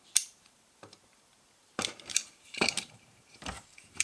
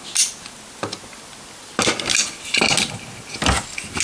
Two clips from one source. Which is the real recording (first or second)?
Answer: second